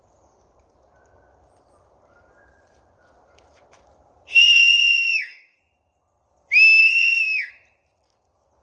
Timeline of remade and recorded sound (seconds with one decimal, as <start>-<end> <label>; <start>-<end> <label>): 0.0-4.4 recorded; 4.4-5.6 remade; 5.6-6.8 recorded; 6.8-7.5 remade; 7.5-8.6 recorded